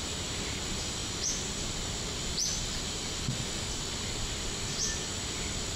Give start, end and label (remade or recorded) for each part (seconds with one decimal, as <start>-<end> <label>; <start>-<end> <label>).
0.0-5.8 recorded